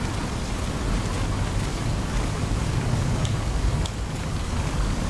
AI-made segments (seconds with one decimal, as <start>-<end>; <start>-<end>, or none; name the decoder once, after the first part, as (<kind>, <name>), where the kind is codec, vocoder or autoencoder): 1.7-5.1 (codec, DAC)